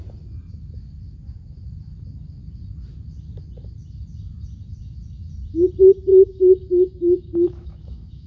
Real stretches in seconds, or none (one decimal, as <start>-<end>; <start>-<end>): 0.0-6.1